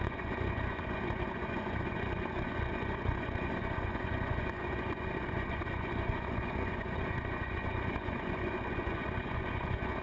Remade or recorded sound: remade